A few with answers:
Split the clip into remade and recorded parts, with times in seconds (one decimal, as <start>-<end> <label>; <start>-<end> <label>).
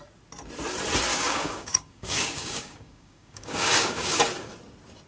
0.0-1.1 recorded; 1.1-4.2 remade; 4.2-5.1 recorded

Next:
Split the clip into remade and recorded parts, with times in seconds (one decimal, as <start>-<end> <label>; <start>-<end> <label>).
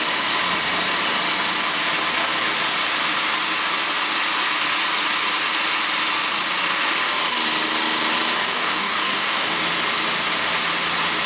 0.0-8.4 recorded; 8.4-9.5 remade; 9.5-11.3 recorded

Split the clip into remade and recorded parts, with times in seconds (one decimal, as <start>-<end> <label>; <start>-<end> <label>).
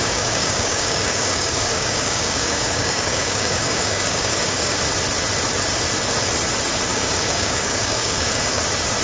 0.0-4.8 remade; 4.8-6.9 recorded; 6.9-8.6 remade; 8.6-9.0 recorded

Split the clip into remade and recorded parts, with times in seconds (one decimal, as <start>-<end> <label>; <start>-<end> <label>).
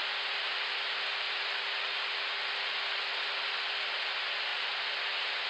0.0-5.5 recorded